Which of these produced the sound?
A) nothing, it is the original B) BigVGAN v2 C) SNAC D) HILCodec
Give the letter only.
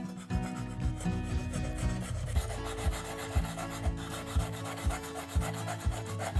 A